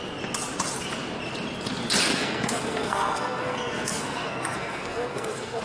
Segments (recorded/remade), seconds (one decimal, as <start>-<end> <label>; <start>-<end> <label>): 0.0-2.1 recorded; 2.1-5.6 remade